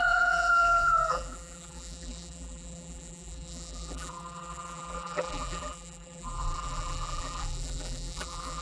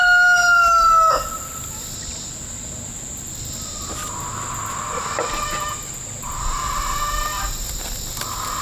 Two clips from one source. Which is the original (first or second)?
second